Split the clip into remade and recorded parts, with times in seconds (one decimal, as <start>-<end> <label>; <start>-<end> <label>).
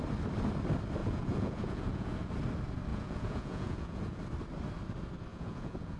0.0-1.0 recorded; 1.0-2.3 remade; 2.3-2.9 recorded; 2.9-4.2 remade; 4.2-5.3 recorded; 5.3-6.0 remade